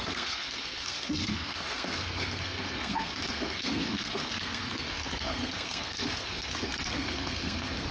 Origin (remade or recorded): remade